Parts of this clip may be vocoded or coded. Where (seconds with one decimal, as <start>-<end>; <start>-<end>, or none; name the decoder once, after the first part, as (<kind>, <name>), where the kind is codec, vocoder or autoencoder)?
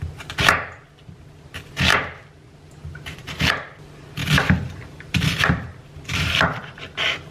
1.9-3.5 (vocoder, BigVGAN v2); 4.2-6.8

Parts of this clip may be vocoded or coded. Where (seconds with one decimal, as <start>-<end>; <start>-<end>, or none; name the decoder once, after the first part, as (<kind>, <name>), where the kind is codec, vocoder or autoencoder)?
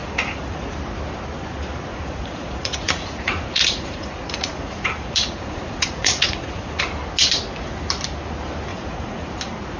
0.0-0.7 (vocoder, Vocos); 1.9-6.8; 8.7-9.3